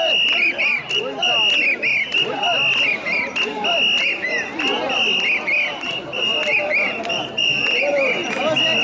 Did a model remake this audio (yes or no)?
no